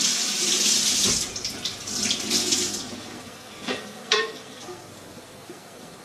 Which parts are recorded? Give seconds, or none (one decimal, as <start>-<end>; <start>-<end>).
0.0-2.4